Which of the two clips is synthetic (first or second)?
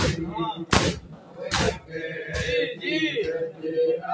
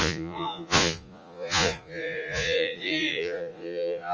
second